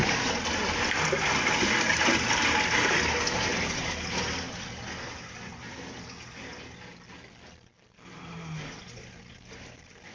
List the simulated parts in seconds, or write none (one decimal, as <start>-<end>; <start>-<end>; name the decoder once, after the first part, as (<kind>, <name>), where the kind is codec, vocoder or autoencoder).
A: 0.0-5.5 (vocoder, BigVGAN v2); 9.3-10.1